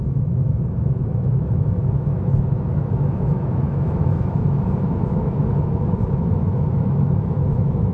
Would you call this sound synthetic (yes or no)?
yes